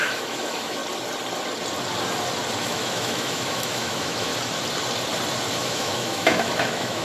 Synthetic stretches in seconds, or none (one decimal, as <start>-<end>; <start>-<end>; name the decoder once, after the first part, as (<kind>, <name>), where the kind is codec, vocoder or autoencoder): 0.0-0.8 (autoencoder, DAC-VAE); 2.6-4.3; 5.5-7.0